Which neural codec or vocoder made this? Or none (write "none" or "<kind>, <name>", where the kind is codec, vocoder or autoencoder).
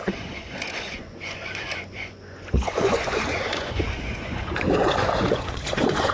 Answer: vocoder, Vocos